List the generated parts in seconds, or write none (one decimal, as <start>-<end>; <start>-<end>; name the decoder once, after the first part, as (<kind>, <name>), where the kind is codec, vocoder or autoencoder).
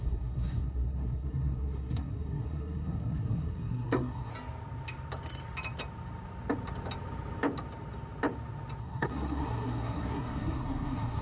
0.0-4.3 (codec, SNAC); 8.8-11.2